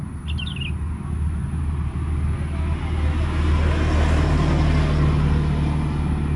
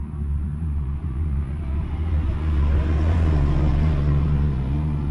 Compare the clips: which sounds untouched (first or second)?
first